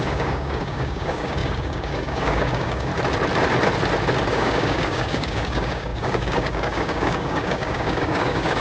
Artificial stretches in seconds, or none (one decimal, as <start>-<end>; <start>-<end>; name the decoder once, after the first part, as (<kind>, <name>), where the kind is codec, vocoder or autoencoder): 0.0-2.9 (codec, DAC); 4.3-8.6